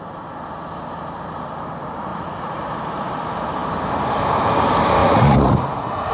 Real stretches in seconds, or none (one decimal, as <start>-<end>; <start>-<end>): 0.0-2.1; 3.1-5.0